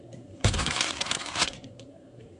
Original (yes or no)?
no